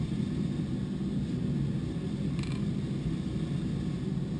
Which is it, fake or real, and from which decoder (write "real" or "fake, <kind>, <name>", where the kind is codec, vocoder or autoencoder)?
real